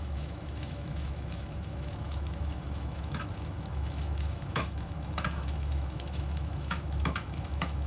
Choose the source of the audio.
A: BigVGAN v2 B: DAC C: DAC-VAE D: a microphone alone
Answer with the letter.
C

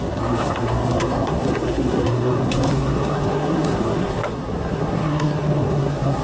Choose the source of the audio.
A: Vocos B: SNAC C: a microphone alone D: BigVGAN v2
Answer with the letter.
B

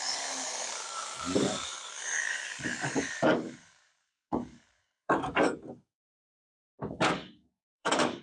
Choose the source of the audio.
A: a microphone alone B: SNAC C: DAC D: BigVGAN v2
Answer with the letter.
C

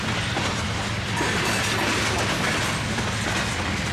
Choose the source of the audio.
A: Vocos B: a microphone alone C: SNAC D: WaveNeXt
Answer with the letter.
B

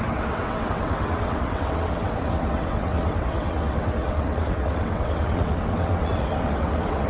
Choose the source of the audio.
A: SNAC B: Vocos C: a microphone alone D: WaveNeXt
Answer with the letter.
D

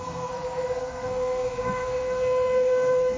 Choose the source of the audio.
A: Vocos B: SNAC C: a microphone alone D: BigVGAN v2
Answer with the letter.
B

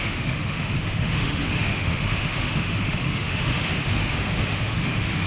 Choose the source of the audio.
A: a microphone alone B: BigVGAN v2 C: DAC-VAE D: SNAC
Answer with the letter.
C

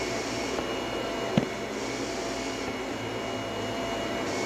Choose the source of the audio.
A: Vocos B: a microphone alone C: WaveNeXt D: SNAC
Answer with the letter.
B